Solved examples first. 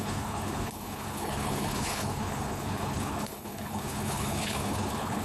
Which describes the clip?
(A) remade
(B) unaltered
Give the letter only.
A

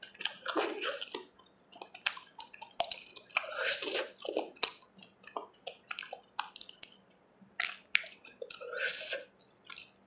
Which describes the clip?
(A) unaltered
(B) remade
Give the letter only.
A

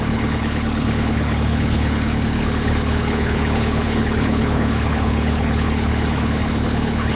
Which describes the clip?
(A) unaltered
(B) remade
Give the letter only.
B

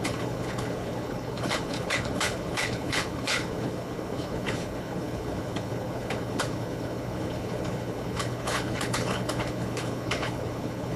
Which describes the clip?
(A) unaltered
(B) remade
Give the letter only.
B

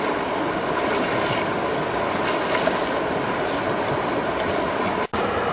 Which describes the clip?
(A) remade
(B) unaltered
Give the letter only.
B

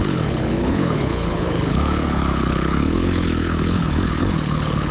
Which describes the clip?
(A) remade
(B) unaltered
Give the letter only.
A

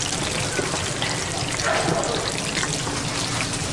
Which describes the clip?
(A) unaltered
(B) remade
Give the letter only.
A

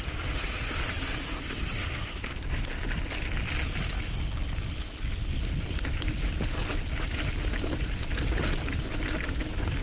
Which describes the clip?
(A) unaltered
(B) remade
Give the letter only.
A